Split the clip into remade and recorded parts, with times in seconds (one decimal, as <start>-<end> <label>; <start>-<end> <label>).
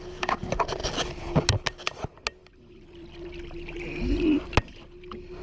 0.0-2.4 recorded; 2.4-3.8 remade; 3.8-5.4 recorded